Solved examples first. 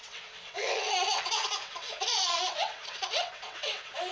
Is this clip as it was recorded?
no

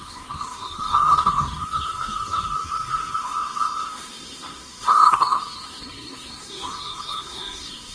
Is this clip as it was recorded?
no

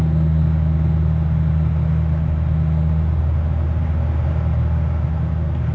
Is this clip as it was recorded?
yes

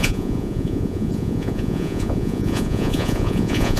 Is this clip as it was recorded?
no